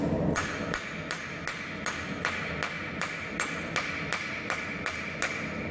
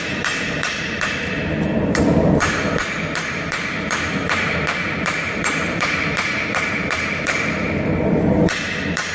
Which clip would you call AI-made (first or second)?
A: second